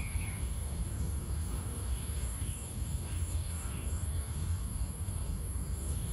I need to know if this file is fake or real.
fake